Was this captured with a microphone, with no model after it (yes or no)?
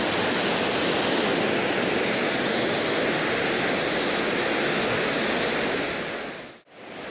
yes